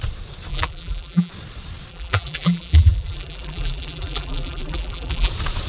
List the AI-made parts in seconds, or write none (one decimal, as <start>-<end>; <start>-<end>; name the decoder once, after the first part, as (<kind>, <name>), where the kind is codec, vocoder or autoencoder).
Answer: 0.5-1.3 (vocoder, BigVGAN v2); 1.9-5.3